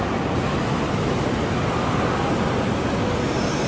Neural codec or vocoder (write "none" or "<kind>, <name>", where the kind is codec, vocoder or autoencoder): none